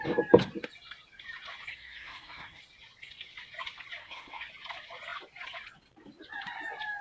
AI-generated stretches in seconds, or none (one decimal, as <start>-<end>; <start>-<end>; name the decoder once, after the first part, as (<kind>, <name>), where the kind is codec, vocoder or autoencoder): 1.7-2.6 (codec, SNAC); 4.0-4.5